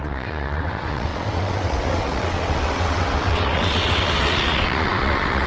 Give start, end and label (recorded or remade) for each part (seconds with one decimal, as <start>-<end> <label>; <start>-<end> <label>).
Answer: 0.0-5.5 remade